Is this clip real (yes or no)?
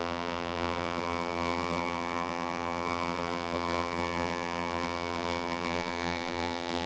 no